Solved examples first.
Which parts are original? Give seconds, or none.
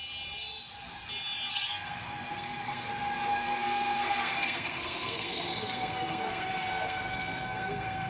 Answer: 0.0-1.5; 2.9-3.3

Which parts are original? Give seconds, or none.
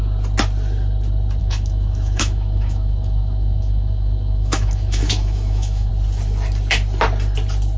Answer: 0.0-1.4; 5.9-7.8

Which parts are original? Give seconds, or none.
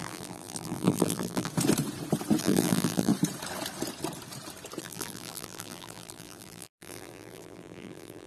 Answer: 1.5-2.4; 3.1-4.8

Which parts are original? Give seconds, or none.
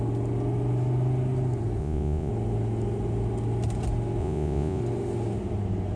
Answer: 0.0-1.8; 2.3-4.2; 4.8-6.0